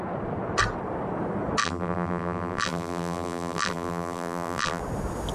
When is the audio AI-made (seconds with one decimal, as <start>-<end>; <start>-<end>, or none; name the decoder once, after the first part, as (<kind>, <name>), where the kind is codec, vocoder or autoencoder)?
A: 1.6-4.8 (vocoder, BigVGAN v2)